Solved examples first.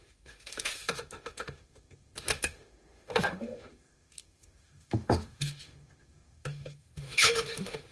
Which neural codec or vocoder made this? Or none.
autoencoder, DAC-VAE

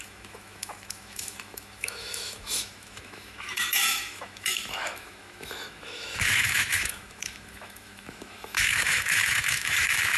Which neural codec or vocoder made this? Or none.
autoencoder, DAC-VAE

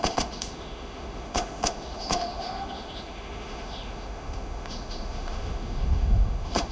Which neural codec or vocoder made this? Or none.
autoencoder, DAC-VAE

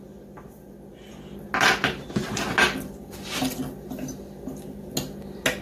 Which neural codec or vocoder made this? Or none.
none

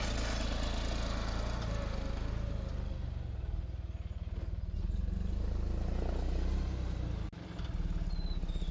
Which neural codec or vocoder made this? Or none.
none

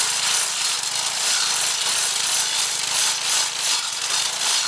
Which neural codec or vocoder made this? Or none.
none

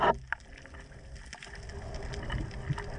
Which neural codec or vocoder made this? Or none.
none